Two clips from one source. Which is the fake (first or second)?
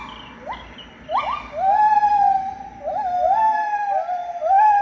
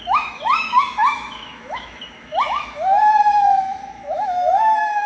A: second